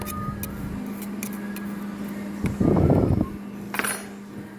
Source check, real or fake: real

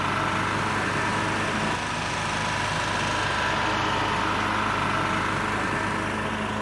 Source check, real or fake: real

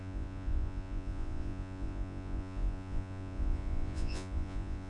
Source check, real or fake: fake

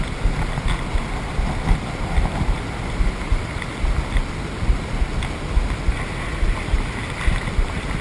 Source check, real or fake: real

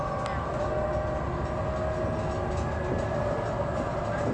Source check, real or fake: real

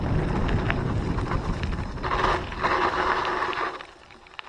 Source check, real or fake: real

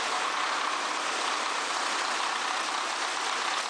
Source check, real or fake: fake